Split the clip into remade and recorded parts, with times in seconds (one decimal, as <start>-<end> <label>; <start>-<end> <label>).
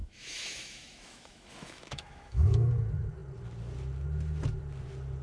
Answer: 0.0-2.7 remade; 2.7-5.2 recorded